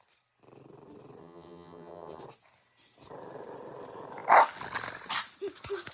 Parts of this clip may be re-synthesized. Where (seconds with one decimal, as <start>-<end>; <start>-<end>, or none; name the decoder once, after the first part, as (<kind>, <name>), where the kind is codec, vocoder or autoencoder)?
1.2-2.2 (vocoder, HiFi-GAN)